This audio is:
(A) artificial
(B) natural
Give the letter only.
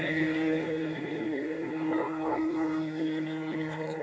A